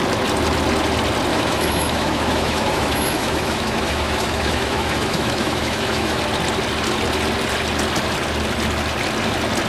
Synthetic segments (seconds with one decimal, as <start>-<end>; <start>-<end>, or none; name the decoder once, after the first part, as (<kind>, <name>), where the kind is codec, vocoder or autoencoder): 1.3-6.2 (autoencoder, DAC-VAE)